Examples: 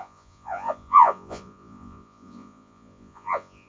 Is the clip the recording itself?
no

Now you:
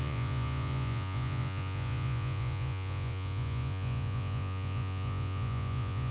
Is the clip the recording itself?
no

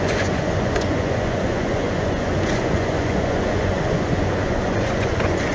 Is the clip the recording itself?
no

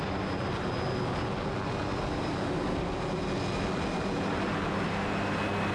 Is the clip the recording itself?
yes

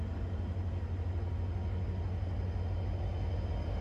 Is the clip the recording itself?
yes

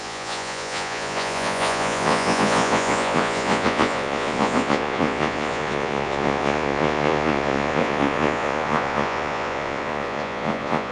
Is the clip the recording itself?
no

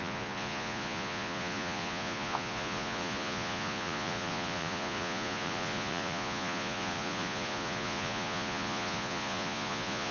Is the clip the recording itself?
no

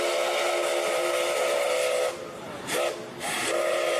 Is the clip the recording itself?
yes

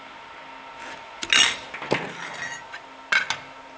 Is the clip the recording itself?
yes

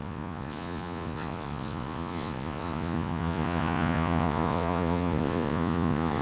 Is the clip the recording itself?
no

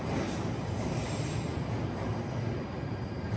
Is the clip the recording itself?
yes